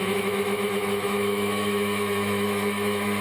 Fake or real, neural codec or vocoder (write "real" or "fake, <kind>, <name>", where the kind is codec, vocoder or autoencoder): fake, autoencoder, DAC-VAE